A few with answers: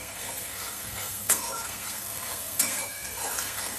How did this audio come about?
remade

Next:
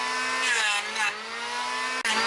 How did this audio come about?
recorded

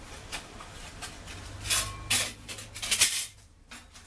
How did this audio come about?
recorded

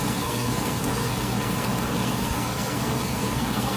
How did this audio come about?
remade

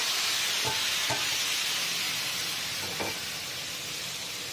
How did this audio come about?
recorded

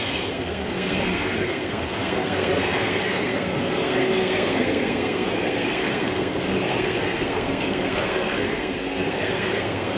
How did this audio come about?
remade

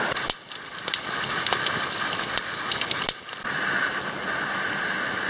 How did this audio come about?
recorded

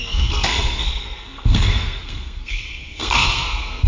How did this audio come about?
remade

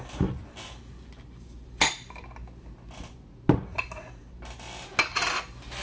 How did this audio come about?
recorded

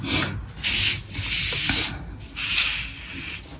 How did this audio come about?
recorded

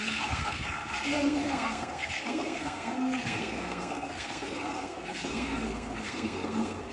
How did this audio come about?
remade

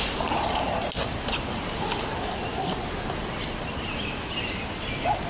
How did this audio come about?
recorded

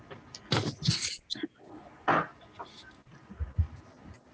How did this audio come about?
recorded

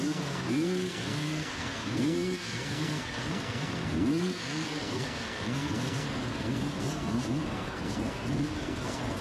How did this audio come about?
remade